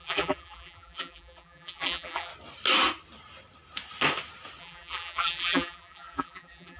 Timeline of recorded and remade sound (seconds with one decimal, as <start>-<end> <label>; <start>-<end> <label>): 0.0-2.3 remade; 2.3-4.6 recorded; 4.6-6.8 remade